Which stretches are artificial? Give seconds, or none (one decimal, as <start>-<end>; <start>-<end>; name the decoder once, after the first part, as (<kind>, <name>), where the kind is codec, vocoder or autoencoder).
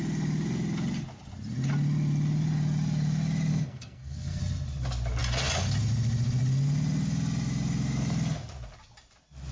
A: 3.5-4.4 (codec, SNAC)